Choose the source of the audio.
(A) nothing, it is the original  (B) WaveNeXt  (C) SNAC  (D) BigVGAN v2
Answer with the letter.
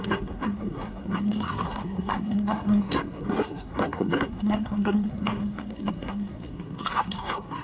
C